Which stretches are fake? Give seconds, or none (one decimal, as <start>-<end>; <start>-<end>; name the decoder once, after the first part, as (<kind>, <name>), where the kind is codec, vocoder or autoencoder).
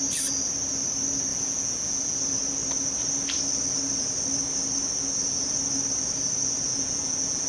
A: 1.3-2.2 (vocoder, Vocos); 6.7-7.5